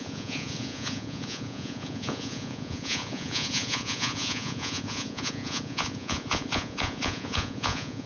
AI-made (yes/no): yes